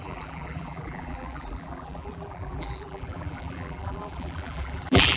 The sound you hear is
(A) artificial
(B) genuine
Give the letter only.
A